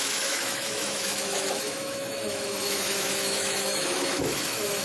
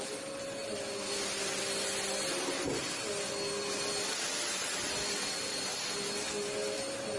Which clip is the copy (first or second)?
first